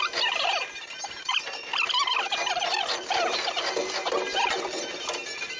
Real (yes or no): yes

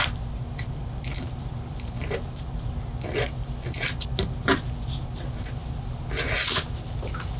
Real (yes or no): yes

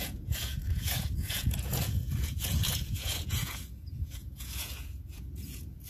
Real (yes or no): no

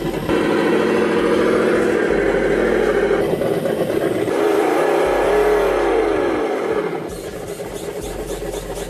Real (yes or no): yes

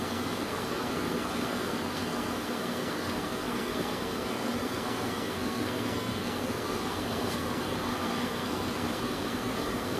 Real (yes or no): no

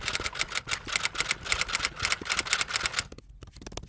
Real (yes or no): yes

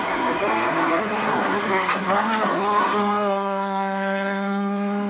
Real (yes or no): no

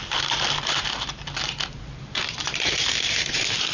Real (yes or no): no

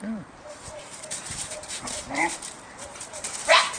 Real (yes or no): no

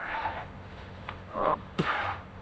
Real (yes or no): no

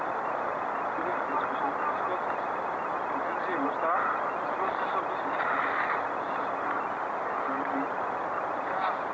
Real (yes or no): yes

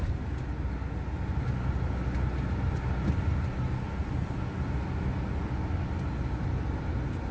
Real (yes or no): yes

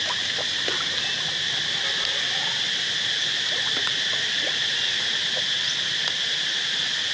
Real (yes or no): yes